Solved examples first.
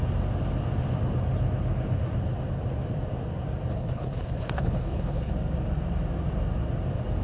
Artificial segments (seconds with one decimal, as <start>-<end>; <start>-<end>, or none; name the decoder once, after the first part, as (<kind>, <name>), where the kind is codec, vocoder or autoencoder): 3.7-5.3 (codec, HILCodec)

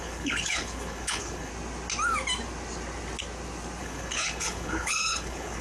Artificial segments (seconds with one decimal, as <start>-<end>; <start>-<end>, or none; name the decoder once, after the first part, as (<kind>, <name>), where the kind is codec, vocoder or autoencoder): 0.0-1.5 (codec, HILCodec); 3.8-5.6

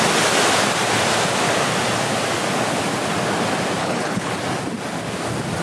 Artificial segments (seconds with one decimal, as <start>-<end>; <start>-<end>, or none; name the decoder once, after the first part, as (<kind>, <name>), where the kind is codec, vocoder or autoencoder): 3.8-4.3 (codec, HILCodec)

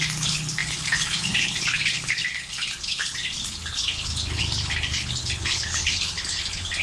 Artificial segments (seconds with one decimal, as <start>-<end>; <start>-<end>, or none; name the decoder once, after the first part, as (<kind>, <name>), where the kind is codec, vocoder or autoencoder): 0.0-6.8 (codec, HILCodec)

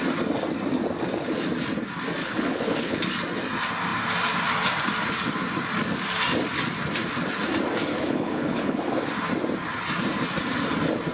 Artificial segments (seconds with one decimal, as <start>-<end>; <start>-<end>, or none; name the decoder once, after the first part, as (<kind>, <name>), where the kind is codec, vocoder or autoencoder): 2.2-3.0 (codec, HILCodec); 7.9-8.8

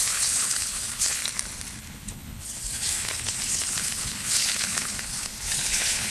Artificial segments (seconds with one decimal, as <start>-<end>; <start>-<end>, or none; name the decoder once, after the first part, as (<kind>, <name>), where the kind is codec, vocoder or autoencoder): 0.0-1.2 (codec, HILCodec); 1.8-6.1

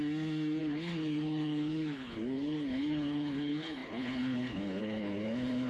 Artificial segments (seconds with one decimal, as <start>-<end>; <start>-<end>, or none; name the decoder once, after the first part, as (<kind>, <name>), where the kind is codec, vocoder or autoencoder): 0.6-5.7 (codec, HILCodec)